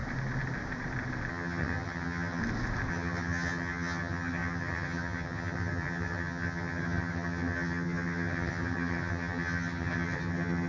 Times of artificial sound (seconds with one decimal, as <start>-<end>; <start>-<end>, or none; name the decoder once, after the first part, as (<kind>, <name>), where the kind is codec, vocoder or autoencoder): 1.3-2.4 (vocoder, HiFi-GAN); 2.9-10.7